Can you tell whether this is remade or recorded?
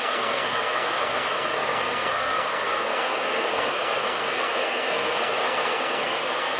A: remade